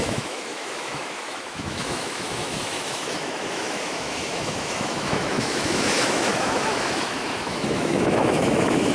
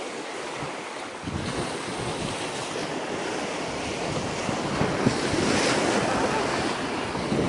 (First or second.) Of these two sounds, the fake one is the first